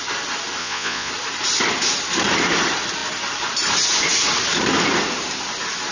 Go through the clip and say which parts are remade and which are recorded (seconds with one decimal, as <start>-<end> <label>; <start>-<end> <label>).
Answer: 0.0-0.6 recorded; 0.6-1.1 remade; 1.1-5.9 recorded

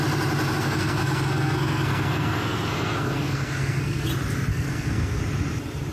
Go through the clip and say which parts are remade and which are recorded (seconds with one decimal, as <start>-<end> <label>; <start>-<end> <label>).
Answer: 0.0-0.6 recorded; 0.6-4.1 remade; 4.1-4.5 recorded; 4.5-5.2 remade; 5.2-5.9 recorded

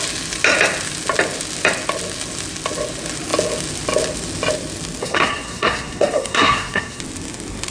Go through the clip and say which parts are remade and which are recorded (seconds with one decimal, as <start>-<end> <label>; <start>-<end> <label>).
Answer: 0.0-5.0 recorded; 5.0-7.0 remade; 7.0-7.7 recorded